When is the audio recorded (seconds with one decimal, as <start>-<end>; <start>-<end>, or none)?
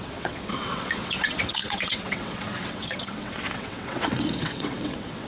none